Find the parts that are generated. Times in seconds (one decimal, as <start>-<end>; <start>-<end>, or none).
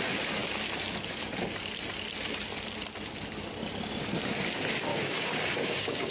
4.9-6.1